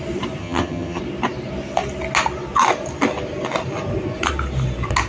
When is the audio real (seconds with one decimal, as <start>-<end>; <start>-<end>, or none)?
0.0-0.4; 1.0-5.1